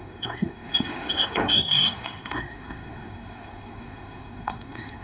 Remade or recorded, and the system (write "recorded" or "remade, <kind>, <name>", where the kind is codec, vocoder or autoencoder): remade, codec, SNAC